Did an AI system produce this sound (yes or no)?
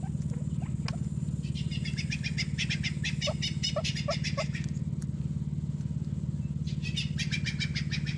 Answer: no